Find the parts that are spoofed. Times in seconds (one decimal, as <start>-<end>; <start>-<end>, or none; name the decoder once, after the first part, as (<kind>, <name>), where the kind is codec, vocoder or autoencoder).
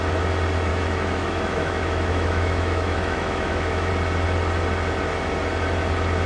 0.7-3.9 (autoencoder, DAC-VAE)